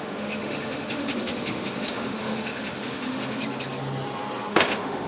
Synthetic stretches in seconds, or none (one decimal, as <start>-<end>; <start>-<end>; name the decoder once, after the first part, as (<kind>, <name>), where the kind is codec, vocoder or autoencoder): 0.0-3.4 (autoencoder, DAC-VAE); 4.5-5.1